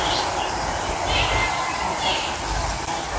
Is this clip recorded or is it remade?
remade